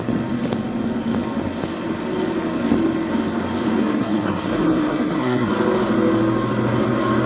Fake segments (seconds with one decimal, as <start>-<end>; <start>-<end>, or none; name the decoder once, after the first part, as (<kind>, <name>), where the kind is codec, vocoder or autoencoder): 3.8-5.5 (codec, SNAC)